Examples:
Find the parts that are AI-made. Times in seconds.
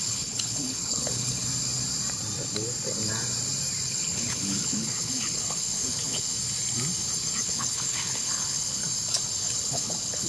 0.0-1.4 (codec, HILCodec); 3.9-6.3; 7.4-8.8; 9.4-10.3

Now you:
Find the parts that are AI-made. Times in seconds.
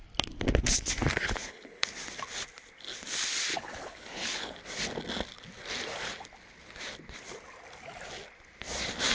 1.4-1.9 (codec, HILCodec); 3.5-4.6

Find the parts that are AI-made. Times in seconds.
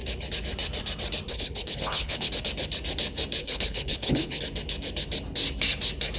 1.3-2.3 (codec, HILCodec); 3.4-4.4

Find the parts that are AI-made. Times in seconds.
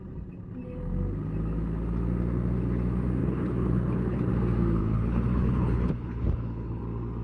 3.2-4.3 (codec, HILCodec); 4.8-6.8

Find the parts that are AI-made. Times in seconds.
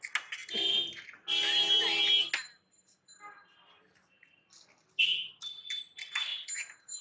none